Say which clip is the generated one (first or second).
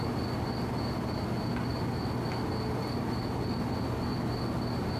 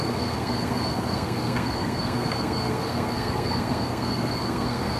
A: second